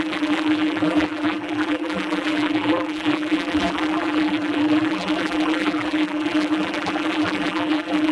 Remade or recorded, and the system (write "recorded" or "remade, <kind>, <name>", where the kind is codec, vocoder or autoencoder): remade, vocoder, BigVGAN v2